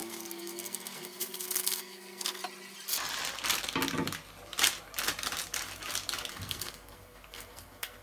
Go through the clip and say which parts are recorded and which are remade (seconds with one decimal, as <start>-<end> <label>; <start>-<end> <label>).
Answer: 0.0-2.4 remade; 2.4-6.3 recorded; 6.3-8.0 remade